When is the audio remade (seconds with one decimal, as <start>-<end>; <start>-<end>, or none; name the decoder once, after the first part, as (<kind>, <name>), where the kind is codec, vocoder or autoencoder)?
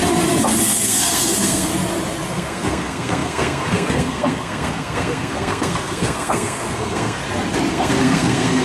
0.6-1.7 (codec, SNAC); 2.3-7.2; 7.7-8.6